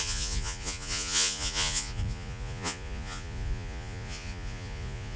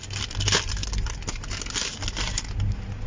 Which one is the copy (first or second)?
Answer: first